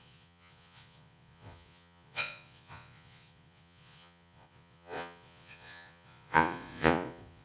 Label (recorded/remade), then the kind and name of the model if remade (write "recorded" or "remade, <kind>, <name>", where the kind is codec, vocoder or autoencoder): remade, vocoder, Vocos